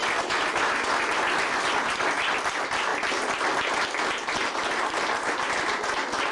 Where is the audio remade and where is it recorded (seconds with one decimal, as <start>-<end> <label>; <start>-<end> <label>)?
0.0-6.3 recorded